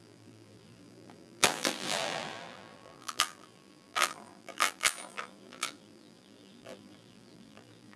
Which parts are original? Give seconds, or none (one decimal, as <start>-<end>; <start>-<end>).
none

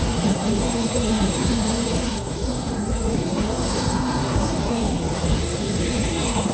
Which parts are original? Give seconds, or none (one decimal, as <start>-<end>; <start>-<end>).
none

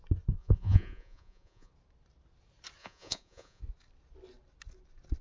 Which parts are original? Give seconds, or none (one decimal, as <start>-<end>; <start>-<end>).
0.0-0.4; 1.7-2.8; 3.6-5.2

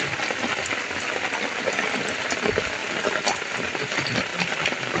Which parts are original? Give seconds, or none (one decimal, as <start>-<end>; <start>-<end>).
0.0-5.0

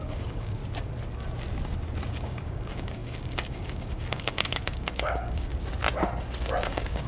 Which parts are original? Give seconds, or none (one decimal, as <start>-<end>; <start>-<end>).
0.6-2.1; 5.5-6.6

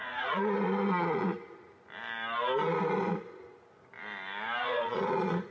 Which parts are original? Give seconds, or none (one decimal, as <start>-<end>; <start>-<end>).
1.3-4.6